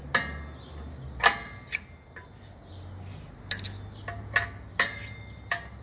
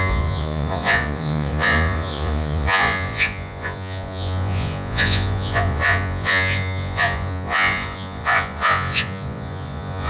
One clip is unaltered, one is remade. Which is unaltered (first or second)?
first